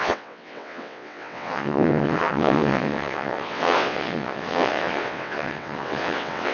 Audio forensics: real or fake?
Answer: fake